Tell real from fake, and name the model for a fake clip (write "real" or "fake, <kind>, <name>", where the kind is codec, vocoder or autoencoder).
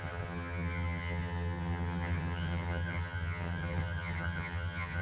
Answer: fake, vocoder, HiFi-GAN